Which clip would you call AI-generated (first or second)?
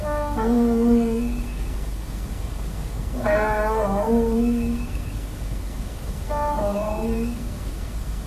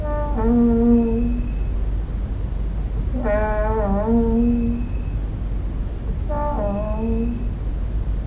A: first